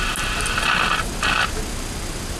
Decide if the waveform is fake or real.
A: real